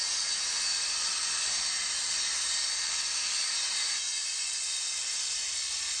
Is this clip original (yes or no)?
yes